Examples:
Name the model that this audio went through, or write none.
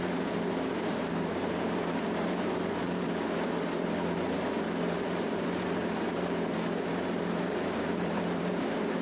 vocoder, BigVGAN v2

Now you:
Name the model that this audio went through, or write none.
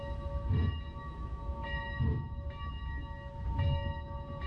none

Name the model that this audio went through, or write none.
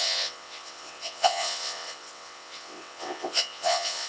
vocoder, WaveNeXt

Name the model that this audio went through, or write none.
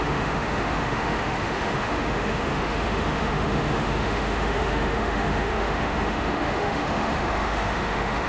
autoencoder, DAC-VAE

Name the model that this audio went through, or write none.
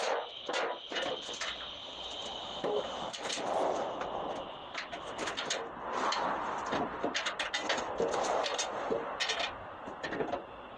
none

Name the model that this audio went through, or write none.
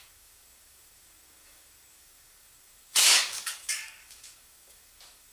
codec, DAC